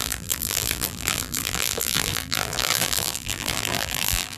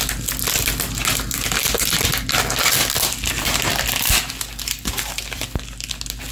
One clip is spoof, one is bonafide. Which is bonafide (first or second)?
second